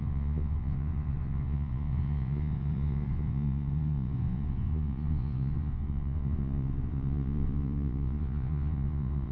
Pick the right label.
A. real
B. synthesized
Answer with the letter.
B